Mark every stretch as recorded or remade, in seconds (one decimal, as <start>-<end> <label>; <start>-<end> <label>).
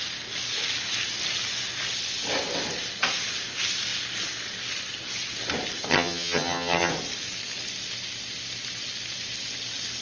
0.0-5.9 recorded; 5.9-6.9 remade; 6.9-10.0 recorded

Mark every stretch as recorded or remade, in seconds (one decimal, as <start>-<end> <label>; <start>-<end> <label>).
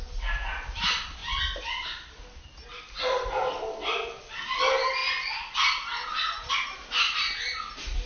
0.0-8.1 recorded